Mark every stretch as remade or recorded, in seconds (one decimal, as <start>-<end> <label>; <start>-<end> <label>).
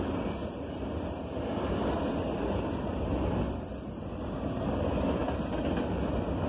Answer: 0.0-6.5 recorded